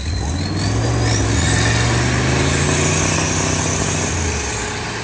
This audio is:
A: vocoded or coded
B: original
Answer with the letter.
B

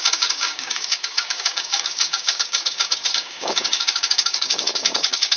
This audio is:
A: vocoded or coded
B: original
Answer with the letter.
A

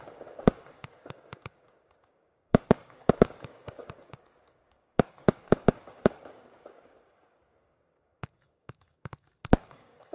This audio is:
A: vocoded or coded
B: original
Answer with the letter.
A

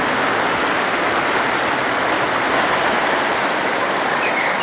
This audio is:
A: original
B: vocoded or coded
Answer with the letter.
A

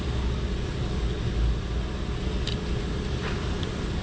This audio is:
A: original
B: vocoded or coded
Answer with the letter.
A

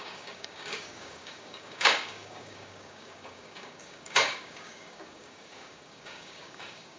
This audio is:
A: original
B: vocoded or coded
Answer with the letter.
B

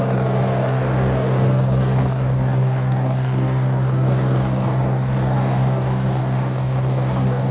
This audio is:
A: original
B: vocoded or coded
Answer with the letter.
B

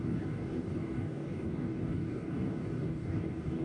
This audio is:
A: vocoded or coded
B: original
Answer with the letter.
A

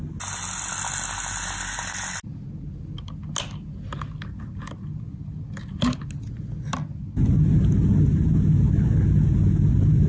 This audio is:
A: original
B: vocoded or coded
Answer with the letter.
A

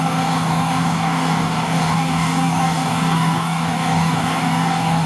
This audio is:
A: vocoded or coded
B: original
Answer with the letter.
A